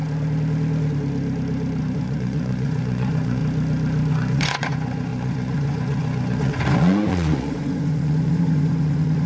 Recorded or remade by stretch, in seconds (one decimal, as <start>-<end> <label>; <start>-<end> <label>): 0.0-1.8 recorded; 1.8-3.4 remade; 3.4-4.1 recorded; 4.1-9.3 remade